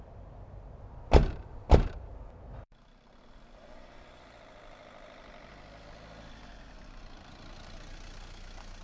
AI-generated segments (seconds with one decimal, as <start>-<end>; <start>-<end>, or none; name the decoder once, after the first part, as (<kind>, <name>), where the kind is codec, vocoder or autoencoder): 1.2-5.5 (vocoder, BigVGAN v2); 6.5-7.0